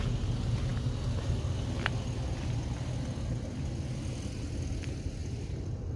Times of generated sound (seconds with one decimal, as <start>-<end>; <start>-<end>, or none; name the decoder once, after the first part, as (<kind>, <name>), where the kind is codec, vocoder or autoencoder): none